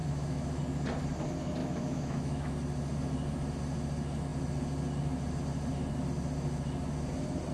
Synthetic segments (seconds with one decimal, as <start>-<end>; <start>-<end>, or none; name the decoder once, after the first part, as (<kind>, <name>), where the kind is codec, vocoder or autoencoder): 0.0-0.6 (autoencoder, DAC-VAE); 1.6-2.5